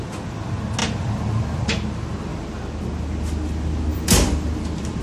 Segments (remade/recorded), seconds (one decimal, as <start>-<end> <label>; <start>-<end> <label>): 0.0-0.8 recorded; 0.8-1.6 remade; 1.6-3.9 recorded; 3.9-5.0 remade